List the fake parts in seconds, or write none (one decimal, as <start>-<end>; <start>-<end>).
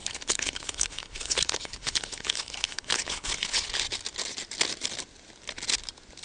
0.0-3.7